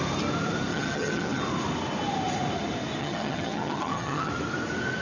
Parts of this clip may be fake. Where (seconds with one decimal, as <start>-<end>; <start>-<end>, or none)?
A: 0.7-1.4; 3.0-4.3